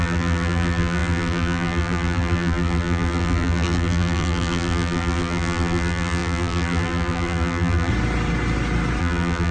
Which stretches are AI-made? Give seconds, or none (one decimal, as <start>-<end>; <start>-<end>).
0.0-7.9; 9.0-9.5